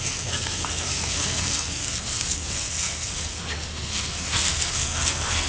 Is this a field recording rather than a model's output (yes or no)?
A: no